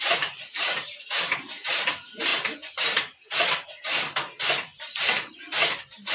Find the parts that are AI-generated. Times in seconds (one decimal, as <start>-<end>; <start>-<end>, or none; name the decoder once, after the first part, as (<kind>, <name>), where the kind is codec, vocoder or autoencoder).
0.0-2.3 (vocoder, BigVGAN v2); 2.8-6.1